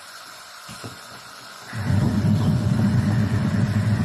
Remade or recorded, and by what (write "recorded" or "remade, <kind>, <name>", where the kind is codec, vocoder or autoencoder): remade, vocoder, Vocos